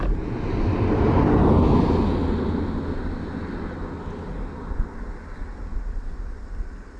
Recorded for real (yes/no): yes